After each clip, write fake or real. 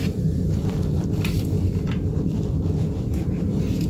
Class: fake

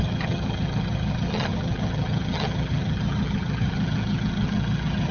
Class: fake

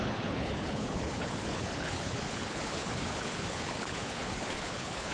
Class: fake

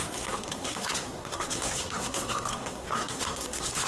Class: fake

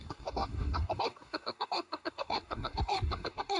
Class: fake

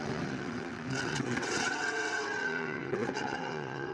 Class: fake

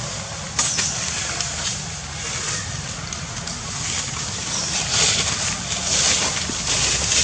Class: real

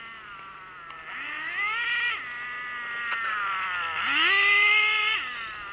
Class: real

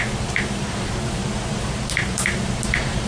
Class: fake